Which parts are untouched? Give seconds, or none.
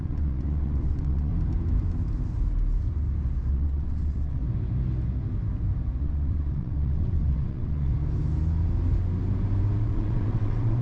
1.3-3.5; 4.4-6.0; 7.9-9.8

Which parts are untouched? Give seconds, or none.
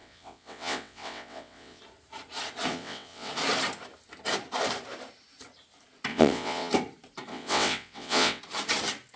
1.8-2.7; 3.3-6.1; 6.7-7.3; 8.4-9.2